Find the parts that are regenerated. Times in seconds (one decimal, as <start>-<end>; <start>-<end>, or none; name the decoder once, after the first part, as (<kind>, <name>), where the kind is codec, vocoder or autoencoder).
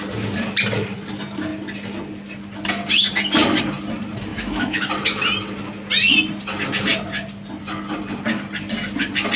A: 4.3-4.8 (autoencoder, DAC-VAE)